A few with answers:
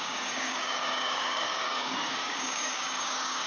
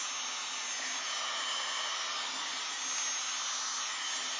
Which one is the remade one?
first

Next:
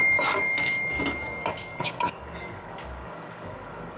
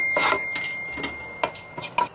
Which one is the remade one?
first